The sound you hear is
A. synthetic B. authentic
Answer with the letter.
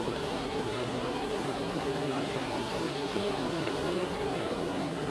A